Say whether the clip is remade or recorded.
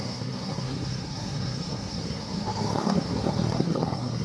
remade